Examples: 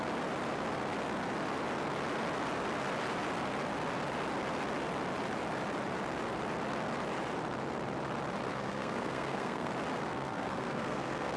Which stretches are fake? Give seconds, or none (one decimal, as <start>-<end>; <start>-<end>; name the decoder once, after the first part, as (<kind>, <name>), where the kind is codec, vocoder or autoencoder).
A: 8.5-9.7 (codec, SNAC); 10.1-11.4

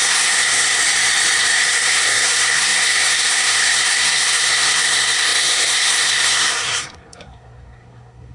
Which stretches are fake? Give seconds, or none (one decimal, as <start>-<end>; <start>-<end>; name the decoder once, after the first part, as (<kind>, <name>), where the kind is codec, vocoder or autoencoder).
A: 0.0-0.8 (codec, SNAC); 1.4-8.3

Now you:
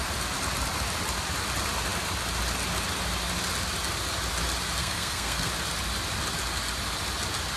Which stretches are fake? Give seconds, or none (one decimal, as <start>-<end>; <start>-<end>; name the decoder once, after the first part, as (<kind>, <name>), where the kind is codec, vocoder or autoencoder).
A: 4.8-5.5 (codec, SNAC)

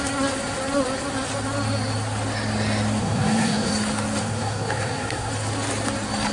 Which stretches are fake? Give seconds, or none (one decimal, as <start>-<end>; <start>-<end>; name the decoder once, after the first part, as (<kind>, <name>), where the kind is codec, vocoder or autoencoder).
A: 3.0-3.7 (codec, SNAC); 4.2-5.3

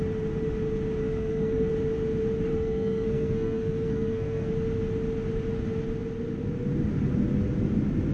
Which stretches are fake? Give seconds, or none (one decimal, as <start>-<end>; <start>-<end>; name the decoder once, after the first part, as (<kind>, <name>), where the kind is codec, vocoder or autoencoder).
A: 1.0-1.7 (codec, SNAC); 2.5-4.5

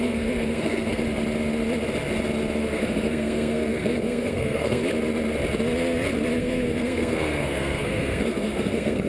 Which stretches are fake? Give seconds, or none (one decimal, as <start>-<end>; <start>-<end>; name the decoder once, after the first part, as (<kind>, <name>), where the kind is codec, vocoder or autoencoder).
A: 0.0-1.0 (codec, SNAC); 2.6-4.8; 6.4-9.1